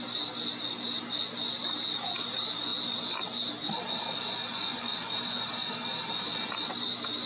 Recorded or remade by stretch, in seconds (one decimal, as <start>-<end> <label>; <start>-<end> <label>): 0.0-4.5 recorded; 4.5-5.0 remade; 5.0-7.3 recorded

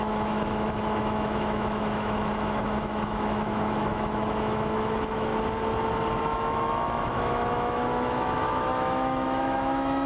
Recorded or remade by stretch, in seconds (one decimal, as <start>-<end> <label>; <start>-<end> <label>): 0.0-5.3 remade; 5.3-6.2 recorded; 6.2-10.1 remade

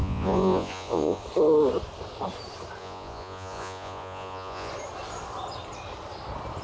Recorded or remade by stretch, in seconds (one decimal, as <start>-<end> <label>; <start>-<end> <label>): 0.0-1.2 remade; 1.2-2.8 recorded; 2.8-4.7 remade; 4.7-6.6 recorded